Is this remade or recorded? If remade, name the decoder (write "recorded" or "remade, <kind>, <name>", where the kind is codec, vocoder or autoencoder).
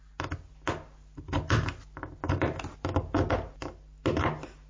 recorded